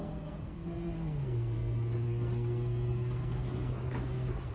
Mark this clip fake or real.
fake